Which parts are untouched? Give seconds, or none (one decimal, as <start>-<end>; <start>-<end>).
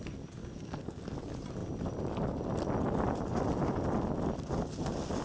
0.0-0.4; 1.0-5.2